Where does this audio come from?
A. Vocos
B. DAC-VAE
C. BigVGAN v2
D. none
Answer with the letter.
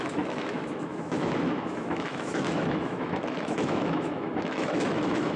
B